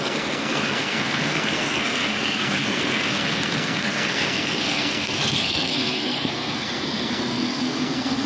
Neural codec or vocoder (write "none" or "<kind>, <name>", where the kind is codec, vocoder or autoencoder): codec, SNAC